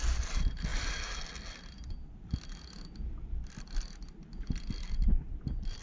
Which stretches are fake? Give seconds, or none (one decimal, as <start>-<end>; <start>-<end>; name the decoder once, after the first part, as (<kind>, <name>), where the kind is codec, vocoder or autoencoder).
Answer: none